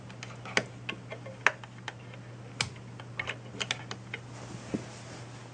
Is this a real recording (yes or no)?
yes